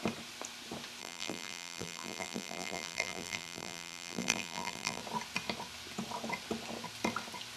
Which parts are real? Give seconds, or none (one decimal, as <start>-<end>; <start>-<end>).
0.0-1.0; 5.0-7.6